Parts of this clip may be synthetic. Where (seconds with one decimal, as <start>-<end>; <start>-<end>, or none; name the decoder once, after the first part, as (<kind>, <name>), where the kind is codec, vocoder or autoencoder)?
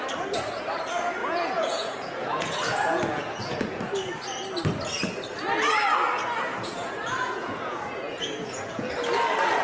1.2-3.8 (vocoder, Vocos); 6.5-8.9